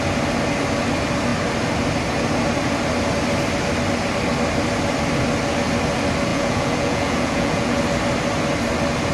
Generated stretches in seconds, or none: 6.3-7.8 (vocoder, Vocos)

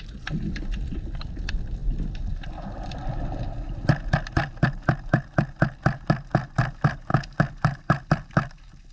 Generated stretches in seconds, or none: none

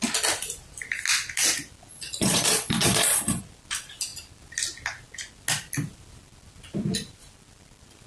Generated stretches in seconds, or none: 1.9-3.4 (vocoder, Vocos)

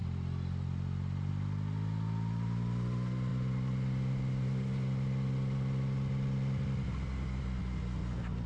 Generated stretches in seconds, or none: none

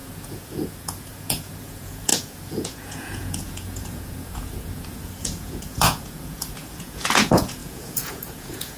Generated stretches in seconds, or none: 0.0-8.8 (vocoder, Vocos)

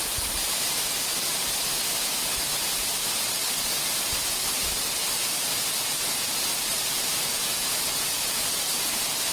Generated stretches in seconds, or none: 7.3-8.4 (vocoder, Vocos)